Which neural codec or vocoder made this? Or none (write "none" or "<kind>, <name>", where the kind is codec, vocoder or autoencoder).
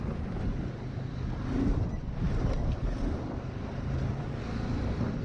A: none